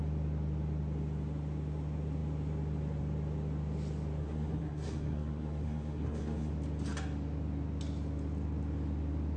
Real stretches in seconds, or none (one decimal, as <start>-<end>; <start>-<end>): 0.0-4.2; 6.5-9.4